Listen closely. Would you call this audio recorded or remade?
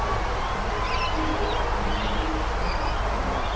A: recorded